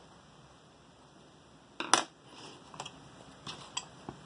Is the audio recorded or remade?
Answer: recorded